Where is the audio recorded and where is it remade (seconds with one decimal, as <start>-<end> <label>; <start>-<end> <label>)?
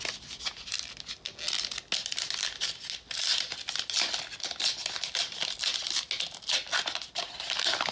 0.0-7.9 recorded